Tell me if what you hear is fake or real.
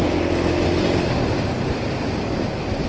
real